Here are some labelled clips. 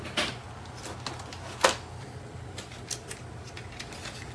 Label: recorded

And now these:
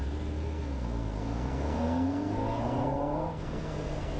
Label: remade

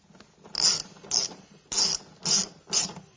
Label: recorded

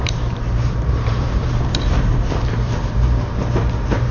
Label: remade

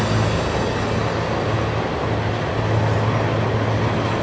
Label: recorded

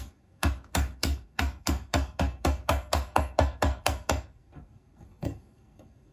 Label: remade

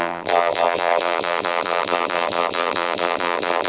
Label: remade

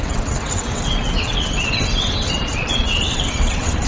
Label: remade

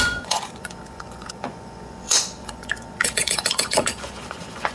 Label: remade